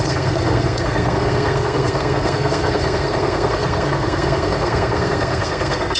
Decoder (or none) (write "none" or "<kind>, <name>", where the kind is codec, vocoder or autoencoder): codec, SNAC